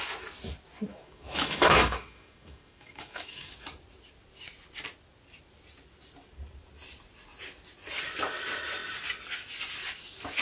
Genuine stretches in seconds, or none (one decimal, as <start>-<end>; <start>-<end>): 0.0-0.9; 3.5-10.4